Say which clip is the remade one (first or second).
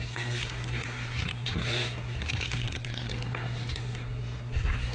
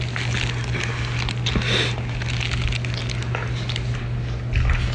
first